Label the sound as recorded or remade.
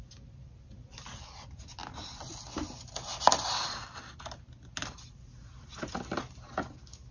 recorded